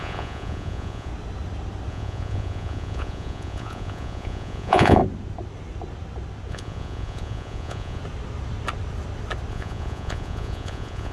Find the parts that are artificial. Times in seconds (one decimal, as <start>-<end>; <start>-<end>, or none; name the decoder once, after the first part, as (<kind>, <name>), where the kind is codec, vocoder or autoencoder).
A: 0.0-1.1 (vocoder, Vocos); 1.9-5.0; 6.5-8.0; 9.5-11.1